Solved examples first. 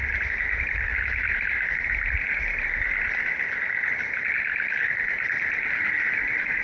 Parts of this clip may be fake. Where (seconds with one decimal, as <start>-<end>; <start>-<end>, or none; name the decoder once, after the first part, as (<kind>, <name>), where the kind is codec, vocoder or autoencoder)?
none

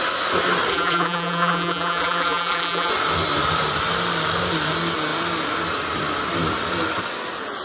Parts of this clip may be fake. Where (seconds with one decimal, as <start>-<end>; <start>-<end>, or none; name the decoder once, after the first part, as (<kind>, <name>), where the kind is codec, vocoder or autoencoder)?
0.7-2.9 (vocoder, BigVGAN v2)

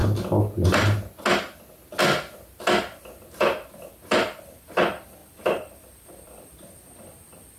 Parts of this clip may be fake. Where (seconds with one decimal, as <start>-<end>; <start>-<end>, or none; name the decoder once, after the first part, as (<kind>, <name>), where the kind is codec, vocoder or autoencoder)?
4.6-7.6 (vocoder, BigVGAN v2)

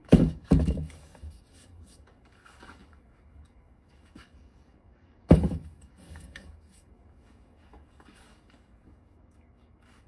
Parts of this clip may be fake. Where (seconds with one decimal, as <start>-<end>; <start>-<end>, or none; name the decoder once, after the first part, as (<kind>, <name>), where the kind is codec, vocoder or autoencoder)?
0.0-10.1 (codec, DAC)

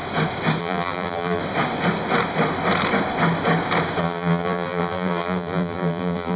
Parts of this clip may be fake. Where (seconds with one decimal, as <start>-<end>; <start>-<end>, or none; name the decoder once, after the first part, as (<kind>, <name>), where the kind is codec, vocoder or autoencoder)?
0.6-1.4 (vocoder, BigVGAN v2); 4.0-6.4

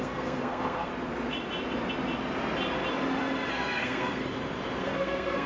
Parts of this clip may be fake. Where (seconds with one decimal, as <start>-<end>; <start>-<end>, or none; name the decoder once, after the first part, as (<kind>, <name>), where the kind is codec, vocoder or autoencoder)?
0.0-0.9 (codec, SNAC); 3.5-4.2; 4.8-5.5